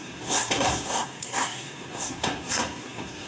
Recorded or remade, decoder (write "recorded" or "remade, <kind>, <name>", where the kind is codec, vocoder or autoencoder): remade, codec, SNAC